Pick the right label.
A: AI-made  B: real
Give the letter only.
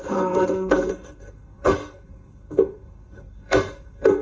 A